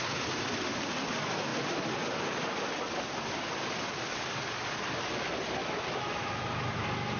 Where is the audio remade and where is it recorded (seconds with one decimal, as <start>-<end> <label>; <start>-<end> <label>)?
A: 0.0-5.6 recorded; 5.6-6.7 remade; 6.7-7.2 recorded